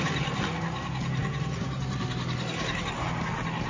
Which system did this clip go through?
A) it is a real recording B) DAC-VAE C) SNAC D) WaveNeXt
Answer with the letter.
A